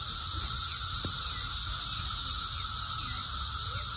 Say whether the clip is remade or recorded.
recorded